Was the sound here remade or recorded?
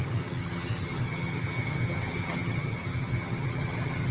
remade